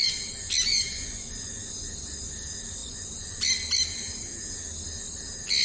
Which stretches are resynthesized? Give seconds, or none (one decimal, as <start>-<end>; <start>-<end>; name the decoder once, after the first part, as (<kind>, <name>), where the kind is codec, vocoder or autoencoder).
0.7-1.5 (vocoder, Vocos); 2.8-3.4